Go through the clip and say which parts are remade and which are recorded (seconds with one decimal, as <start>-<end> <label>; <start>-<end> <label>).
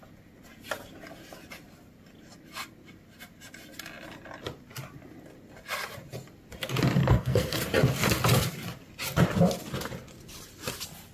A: 0.0-7.0 recorded; 7.0-7.6 remade; 7.6-11.1 recorded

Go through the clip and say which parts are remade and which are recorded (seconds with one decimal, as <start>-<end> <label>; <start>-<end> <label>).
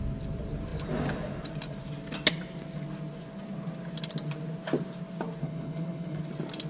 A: 0.0-5.4 recorded; 5.4-6.2 remade; 6.2-6.7 recorded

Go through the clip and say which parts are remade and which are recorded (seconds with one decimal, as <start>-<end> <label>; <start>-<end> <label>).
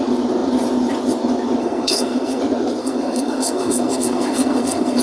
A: 0.0-1.6 recorded; 1.6-2.4 remade; 2.4-2.8 recorded; 2.8-5.0 remade